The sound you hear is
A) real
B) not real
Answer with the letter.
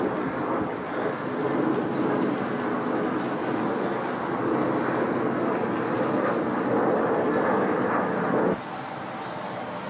A